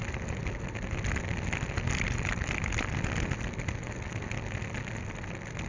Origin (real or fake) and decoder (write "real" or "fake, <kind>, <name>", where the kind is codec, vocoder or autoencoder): real